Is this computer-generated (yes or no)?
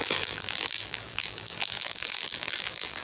yes